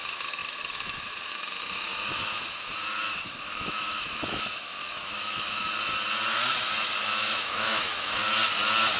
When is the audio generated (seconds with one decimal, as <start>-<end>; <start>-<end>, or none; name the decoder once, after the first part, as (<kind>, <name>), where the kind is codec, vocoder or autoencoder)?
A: 0.0-5.6 (autoencoder, DAC-VAE); 7.0-8.2